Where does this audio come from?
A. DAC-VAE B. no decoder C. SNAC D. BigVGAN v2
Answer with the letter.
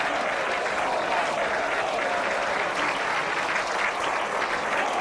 B